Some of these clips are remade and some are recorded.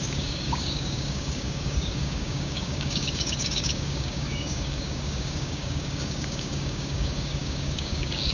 remade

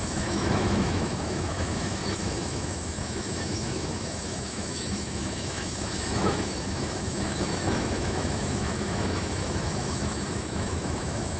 remade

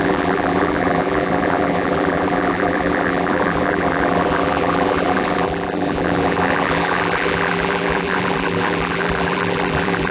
remade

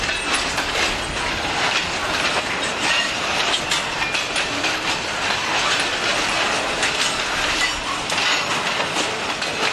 recorded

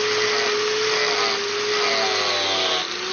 recorded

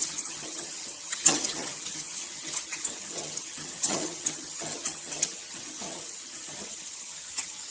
remade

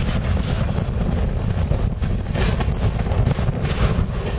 recorded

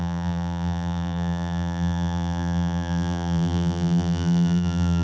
remade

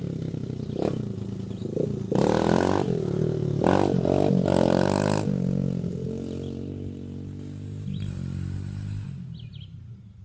recorded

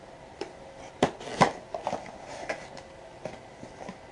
recorded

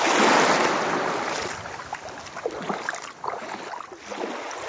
recorded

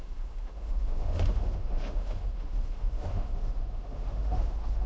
remade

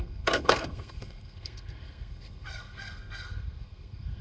remade